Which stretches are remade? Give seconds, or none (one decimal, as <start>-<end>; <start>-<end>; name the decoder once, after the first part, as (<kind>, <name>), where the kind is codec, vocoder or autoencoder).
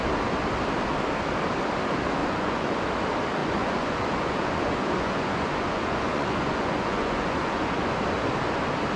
2.2-2.8 (vocoder, Vocos); 3.4-8.0